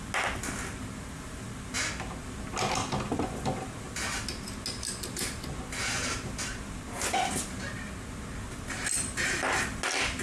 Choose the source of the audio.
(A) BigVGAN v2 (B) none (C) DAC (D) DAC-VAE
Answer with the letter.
B